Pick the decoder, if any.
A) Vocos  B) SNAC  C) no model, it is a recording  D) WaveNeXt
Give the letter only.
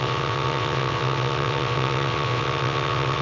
D